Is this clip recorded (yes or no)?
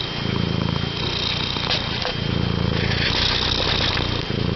yes